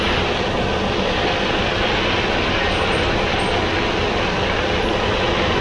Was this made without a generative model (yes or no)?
yes